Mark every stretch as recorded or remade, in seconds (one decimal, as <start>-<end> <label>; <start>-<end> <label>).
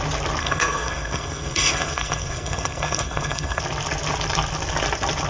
0.0-0.4 recorded; 0.4-3.6 remade; 3.6-5.3 recorded